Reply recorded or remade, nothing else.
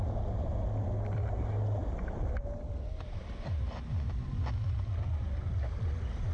recorded